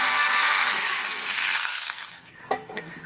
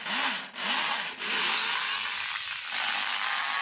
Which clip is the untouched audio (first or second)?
second